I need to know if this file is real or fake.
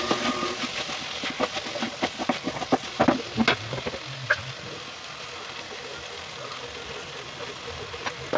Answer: real